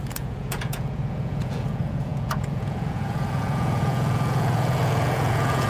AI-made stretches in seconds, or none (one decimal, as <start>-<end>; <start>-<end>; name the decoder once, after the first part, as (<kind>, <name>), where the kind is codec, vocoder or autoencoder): 0.0-5.7 (vocoder, Vocos)